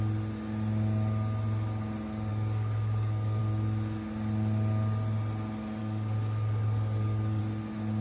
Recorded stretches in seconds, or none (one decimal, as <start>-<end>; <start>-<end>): 0.0-2.3; 3.4-5.8; 7.4-8.0